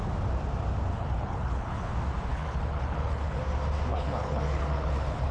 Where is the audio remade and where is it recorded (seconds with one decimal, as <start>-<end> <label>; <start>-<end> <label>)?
0.0-0.9 recorded; 0.9-1.9 remade; 1.9-2.3 recorded; 2.3-3.4 remade; 3.4-3.9 recorded; 3.9-5.3 remade